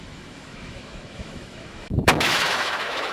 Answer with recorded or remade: remade